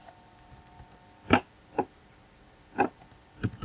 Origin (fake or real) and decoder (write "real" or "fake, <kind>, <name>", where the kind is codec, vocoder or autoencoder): real